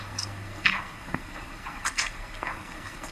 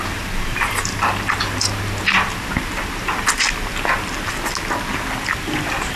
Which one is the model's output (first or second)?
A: first